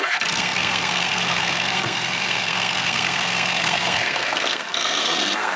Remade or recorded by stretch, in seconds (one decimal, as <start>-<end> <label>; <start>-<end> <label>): 0.0-5.6 remade